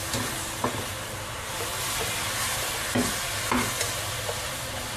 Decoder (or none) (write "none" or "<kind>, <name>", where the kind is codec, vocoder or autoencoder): none